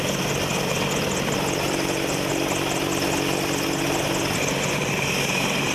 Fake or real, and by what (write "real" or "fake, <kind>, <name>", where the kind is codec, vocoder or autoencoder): real